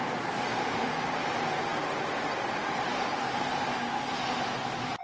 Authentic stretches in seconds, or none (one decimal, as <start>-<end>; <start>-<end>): 0.0-0.5; 1.0-5.0